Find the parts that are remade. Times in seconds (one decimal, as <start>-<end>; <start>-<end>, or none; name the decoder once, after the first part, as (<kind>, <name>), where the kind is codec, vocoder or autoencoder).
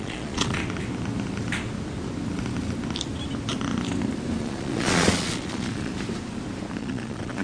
0.0-0.6 (vocoder, Vocos); 4.4-5.9; 6.8-7.4